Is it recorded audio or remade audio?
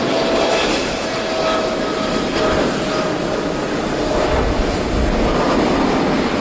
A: recorded